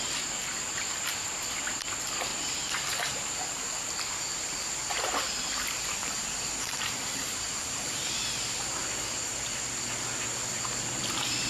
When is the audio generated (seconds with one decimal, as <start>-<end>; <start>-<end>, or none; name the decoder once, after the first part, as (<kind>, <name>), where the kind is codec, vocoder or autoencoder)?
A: 2.3-3.8 (vocoder, BigVGAN v2); 6.0-8.0